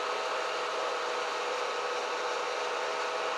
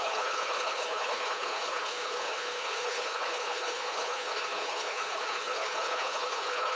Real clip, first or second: first